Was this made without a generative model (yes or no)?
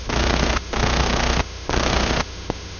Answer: no